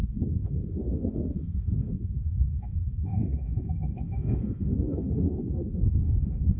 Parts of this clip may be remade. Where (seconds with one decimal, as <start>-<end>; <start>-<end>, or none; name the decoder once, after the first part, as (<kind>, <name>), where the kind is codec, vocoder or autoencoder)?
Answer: 0.0-6.6 (autoencoder, DAC-VAE)